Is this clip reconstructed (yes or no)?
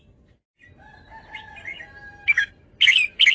no